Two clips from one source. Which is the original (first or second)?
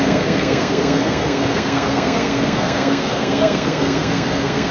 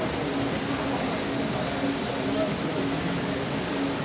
second